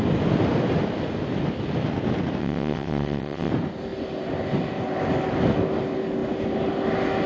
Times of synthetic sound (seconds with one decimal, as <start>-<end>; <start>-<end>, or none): 2.4-3.5